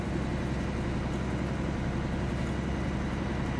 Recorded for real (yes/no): yes